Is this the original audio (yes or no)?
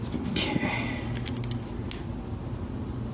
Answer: yes